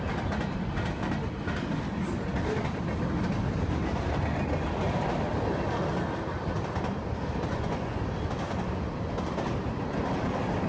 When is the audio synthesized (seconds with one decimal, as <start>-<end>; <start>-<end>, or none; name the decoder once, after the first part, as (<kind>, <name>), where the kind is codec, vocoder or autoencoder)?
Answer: 7.5-8.0 (vocoder, Vocos)